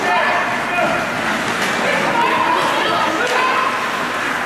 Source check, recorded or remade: recorded